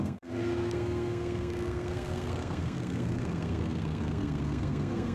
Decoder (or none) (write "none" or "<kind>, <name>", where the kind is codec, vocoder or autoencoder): codec, SNAC